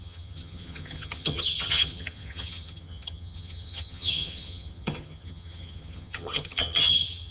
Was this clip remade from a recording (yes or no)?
yes